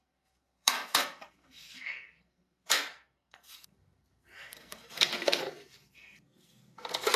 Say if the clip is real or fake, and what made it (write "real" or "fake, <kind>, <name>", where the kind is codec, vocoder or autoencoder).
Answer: fake, codec, SNAC